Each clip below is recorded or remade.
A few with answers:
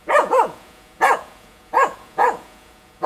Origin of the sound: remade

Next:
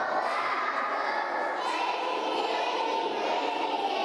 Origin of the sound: recorded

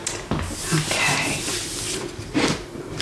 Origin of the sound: recorded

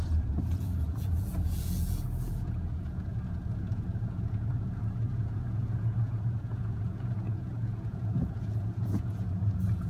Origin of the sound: remade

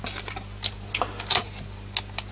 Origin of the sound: recorded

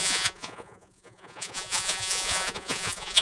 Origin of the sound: remade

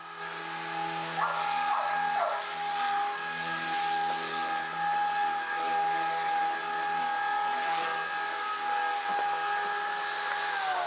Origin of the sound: recorded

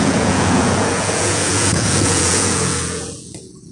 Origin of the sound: remade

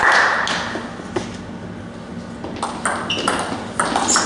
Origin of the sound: recorded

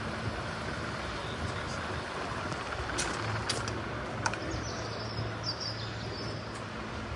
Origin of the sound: recorded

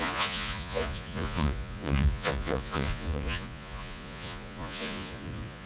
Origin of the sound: remade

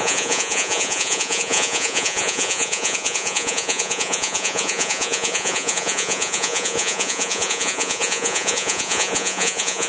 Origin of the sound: remade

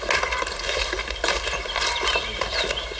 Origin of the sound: recorded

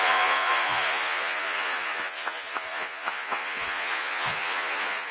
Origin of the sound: remade